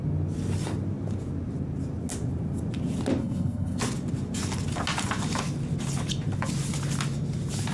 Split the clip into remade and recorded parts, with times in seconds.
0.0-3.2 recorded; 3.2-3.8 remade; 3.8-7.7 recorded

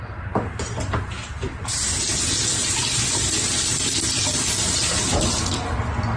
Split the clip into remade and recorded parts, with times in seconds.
0.0-6.2 recorded

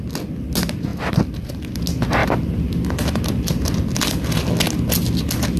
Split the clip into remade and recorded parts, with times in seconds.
0.0-0.9 recorded; 0.9-1.8 remade; 1.8-2.2 recorded; 2.2-4.4 remade; 4.4-5.6 recorded